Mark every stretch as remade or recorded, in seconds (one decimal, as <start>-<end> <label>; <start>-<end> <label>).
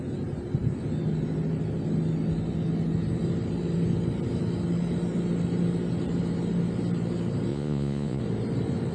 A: 0.0-7.5 recorded; 7.5-8.2 remade; 8.2-8.9 recorded